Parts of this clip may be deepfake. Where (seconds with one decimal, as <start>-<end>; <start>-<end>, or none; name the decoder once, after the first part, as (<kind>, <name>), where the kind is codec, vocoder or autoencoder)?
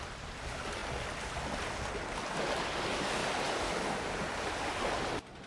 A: none